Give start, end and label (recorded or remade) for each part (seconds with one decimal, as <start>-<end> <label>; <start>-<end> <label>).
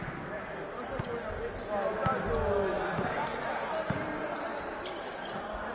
0.0-5.7 recorded